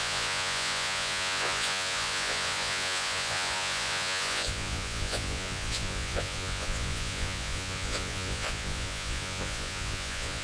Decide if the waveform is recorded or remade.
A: remade